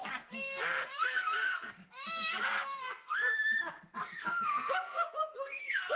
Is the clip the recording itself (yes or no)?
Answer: no